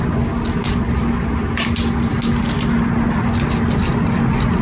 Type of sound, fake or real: real